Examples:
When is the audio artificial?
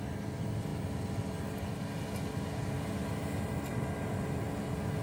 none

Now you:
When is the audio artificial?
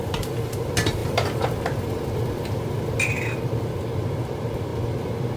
none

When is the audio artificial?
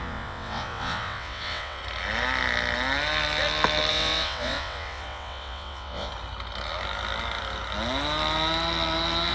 0.0-1.8; 3.9-6.1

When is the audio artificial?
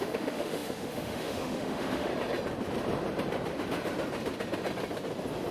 0.0-2.1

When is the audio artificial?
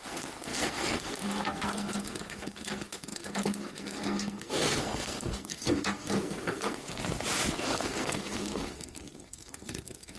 0.0-7.0; 7.5-10.2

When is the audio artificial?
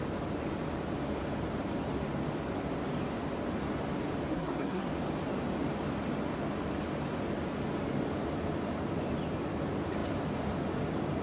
4.3-4.9